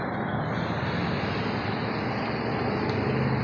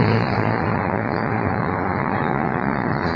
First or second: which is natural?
first